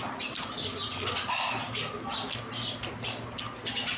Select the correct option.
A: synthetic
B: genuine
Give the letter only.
B